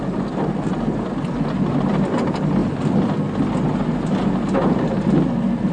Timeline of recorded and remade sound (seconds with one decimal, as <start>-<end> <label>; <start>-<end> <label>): 0.0-5.7 recorded